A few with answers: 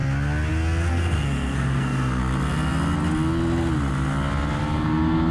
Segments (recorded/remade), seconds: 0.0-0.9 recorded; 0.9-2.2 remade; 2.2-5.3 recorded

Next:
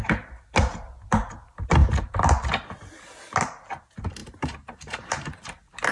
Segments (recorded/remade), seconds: 0.0-4.2 recorded; 4.2-5.5 remade; 5.5-5.9 recorded

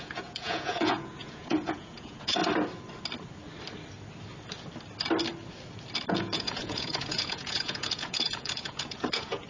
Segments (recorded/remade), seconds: 0.0-2.4 remade; 2.4-6.1 recorded; 6.1-9.5 remade